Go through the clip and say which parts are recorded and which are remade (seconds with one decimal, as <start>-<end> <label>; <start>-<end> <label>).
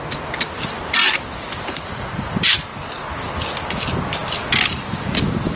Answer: 0.0-1.3 recorded; 1.3-1.9 remade; 1.9-5.6 recorded